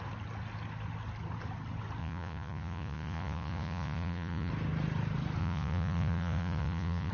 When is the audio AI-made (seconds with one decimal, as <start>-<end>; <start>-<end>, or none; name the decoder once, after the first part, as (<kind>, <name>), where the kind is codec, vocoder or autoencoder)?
2.0-4.5 (vocoder, Vocos); 5.4-7.1